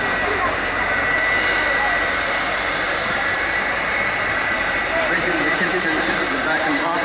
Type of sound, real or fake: fake